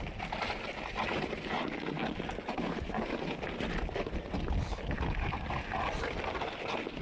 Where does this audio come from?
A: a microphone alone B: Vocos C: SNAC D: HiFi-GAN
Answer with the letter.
A